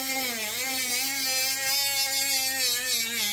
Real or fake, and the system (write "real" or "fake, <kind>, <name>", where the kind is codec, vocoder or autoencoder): real